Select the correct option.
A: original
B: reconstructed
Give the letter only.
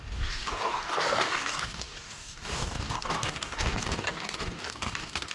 B